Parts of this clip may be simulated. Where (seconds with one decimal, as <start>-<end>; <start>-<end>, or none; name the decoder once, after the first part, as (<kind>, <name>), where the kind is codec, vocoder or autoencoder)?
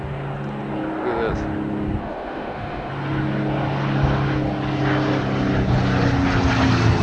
2.0-2.9 (autoencoder, DAC-VAE)